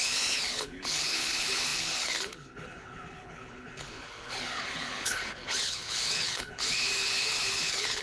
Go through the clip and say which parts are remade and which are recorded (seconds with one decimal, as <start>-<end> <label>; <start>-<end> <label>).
0.0-8.0 remade